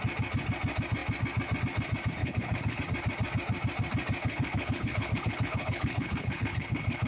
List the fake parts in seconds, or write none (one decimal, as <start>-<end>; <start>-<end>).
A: 2.2-2.8; 4.2-7.1